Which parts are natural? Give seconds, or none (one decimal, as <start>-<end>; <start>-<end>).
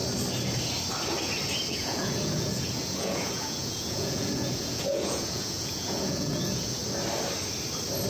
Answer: 0.0-1.7; 6.8-8.1